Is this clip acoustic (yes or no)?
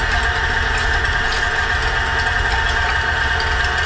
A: yes